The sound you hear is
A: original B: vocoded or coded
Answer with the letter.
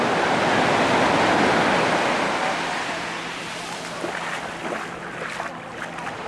A